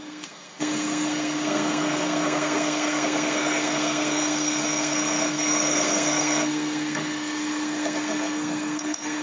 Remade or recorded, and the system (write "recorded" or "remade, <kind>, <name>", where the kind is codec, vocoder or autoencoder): remade, codec, SNAC